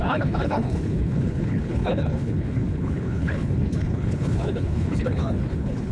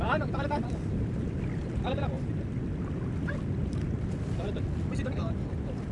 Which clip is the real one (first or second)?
second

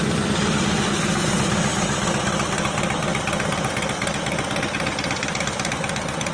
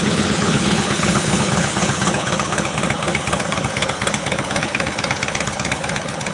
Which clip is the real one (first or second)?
first